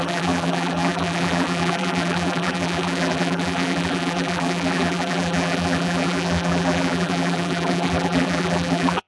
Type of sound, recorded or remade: remade